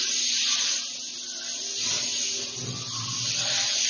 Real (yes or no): yes